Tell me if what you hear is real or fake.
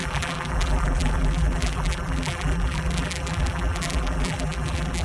fake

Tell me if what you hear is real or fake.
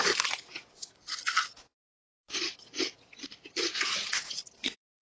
fake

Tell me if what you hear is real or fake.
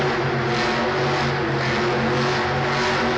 real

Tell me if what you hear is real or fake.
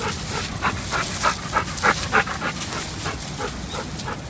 real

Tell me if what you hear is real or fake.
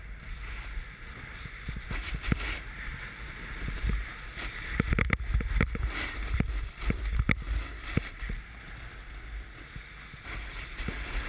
real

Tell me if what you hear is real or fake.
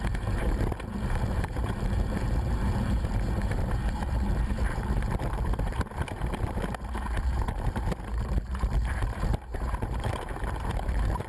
fake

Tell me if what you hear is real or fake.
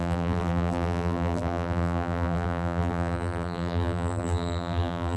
fake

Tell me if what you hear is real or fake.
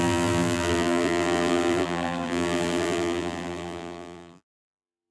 fake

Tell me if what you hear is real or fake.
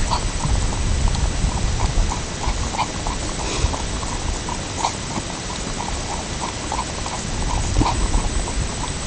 real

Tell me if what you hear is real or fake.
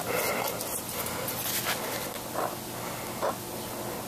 real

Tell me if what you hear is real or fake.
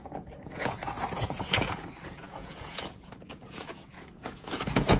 fake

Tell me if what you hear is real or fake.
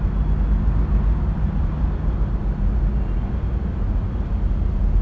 real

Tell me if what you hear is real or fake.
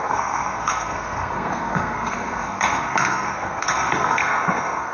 fake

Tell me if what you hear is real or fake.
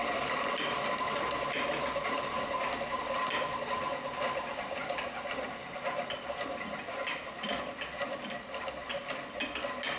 real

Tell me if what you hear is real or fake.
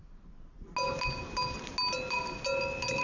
real